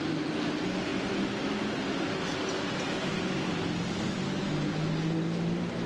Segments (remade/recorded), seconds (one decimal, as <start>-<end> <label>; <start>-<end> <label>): 0.0-5.9 recorded